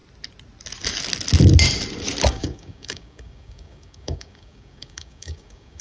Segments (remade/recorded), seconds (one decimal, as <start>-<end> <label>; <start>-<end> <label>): 0.0-2.3 recorded; 2.3-5.8 remade